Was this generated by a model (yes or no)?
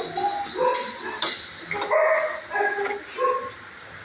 no